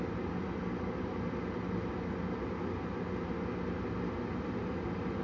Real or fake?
real